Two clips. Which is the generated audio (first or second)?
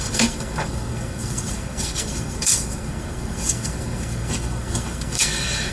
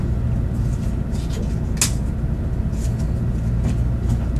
first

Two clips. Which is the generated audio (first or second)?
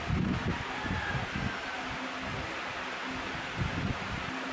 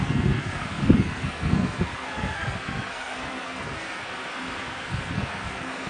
second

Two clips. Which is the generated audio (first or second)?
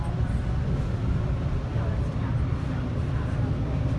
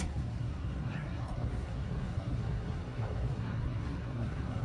second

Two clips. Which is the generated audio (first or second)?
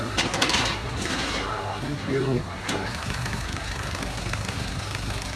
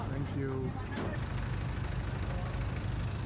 first